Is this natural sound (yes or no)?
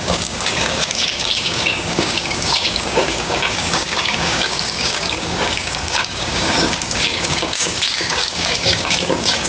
no